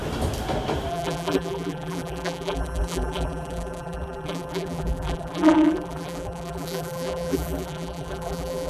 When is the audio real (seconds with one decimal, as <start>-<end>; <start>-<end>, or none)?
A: 0.0-0.9

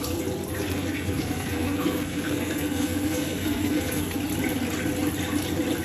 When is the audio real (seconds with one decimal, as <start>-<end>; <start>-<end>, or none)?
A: 0.0-0.7; 4.2-5.8

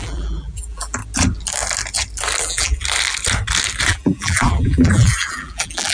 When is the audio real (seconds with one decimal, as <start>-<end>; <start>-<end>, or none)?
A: 1.0-2.4; 2.8-3.9

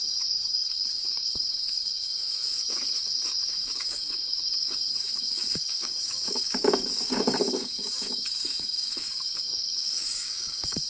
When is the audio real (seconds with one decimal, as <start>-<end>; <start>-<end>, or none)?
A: none